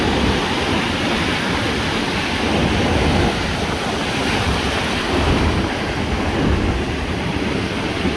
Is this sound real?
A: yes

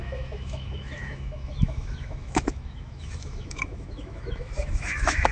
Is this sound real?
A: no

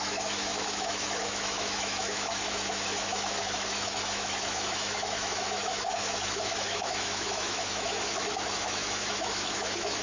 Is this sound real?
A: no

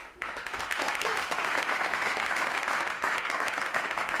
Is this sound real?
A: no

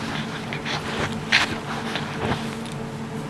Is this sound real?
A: yes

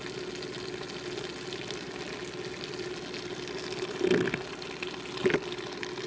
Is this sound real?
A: yes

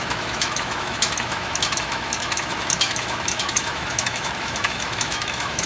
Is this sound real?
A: no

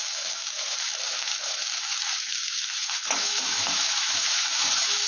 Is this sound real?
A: no